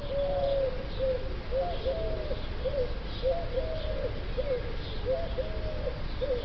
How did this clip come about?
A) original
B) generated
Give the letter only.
A